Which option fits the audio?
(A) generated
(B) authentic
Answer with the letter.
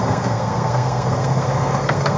A